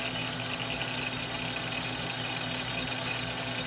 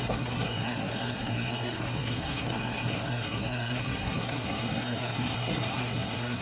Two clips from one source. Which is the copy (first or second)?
second